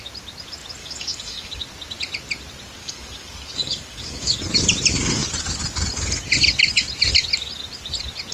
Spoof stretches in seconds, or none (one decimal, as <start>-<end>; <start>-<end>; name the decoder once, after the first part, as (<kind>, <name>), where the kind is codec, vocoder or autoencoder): 0.8-1.5 (codec, DAC); 2.8-4.4